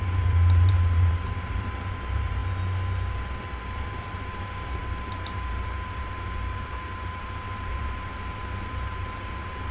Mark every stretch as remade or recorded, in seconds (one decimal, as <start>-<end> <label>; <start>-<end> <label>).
0.0-2.4 remade; 2.4-3.6 recorded; 3.6-9.7 remade